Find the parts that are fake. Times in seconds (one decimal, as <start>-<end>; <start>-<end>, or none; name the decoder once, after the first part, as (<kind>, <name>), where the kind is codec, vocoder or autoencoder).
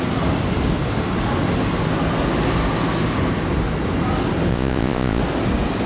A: 4.5-5.2 (vocoder, Vocos)